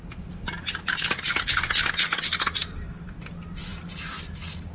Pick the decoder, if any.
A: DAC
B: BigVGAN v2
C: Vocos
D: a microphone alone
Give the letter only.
D